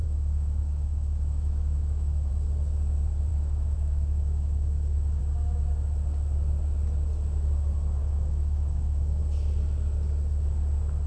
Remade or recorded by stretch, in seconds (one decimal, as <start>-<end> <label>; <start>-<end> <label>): 0.0-2.3 remade; 2.3-3.3 recorded; 3.3-5.2 remade; 5.2-8.0 recorded; 8.0-9.2 remade; 9.2-11.1 recorded